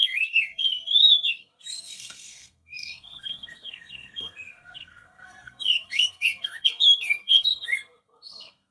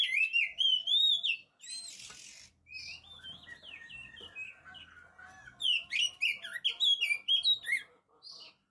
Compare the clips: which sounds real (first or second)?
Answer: second